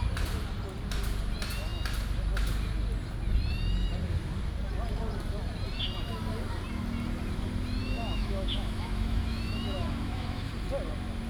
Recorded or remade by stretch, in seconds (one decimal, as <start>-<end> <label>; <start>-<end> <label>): 0.0-7.8 recorded; 7.8-10.5 remade; 10.5-11.3 recorded